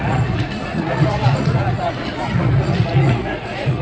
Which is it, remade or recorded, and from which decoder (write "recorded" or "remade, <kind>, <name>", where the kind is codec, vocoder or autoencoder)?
remade, vocoder, Vocos